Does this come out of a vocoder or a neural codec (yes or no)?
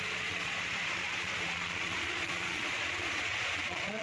yes